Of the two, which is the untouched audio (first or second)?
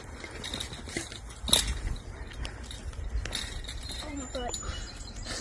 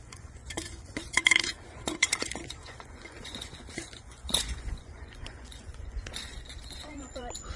first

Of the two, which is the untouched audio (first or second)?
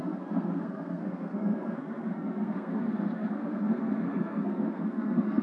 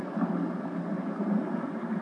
second